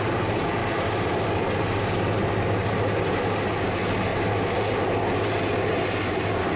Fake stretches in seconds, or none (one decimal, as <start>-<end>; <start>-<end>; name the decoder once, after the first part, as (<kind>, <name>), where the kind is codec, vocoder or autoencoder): none